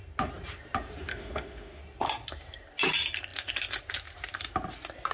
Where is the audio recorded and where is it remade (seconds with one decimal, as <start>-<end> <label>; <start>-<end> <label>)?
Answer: 0.0-1.1 recorded; 1.1-1.8 remade; 1.8-5.1 recorded